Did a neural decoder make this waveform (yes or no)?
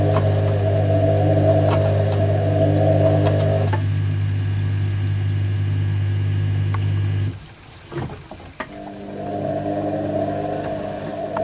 no